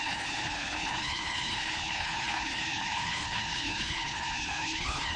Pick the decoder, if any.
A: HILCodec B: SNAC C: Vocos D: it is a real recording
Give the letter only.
A